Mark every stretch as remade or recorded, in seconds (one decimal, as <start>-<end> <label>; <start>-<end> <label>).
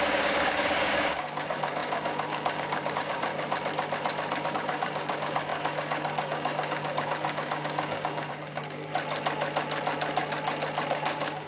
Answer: 0.0-3.3 remade; 3.3-4.5 recorded; 4.5-8.9 remade; 8.9-10.9 recorded; 10.9-11.5 remade